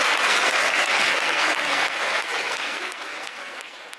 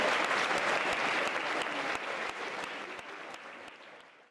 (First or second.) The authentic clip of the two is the second